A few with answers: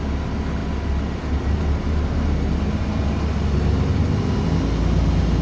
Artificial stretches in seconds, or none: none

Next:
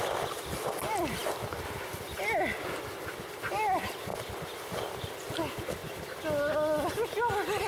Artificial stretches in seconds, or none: 1.2-2.2 (vocoder, BigVGAN v2)

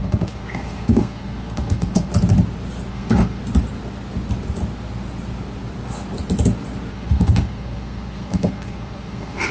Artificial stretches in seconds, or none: 0.0-2.1 (codec, SNAC); 2.9-3.4; 6.9-9.5

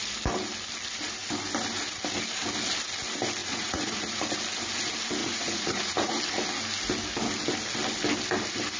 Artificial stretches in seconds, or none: 3.4-4.3 (vocoder, Vocos); 5.2-6.2

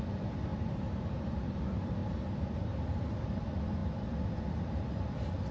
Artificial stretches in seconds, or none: 0.5-1.5 (vocoder, BigVGAN v2); 2.0-3.2

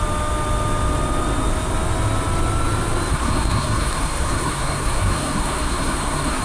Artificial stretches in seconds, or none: 3.1-6.4 (codec, SNAC)

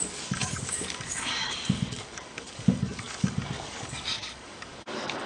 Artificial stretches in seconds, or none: 0.0-5.3 (codec, DAC)